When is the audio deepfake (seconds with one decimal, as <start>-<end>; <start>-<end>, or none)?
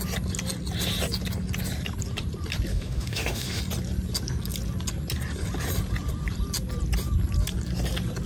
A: 2.7-3.6